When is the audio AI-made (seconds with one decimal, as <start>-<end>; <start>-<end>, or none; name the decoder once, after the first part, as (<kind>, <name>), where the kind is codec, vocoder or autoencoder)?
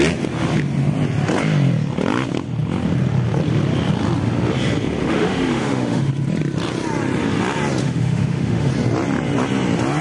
5.0-6.1 (autoencoder, DAC-VAE); 7.8-8.7